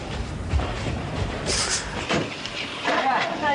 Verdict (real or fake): fake